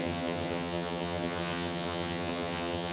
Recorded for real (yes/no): no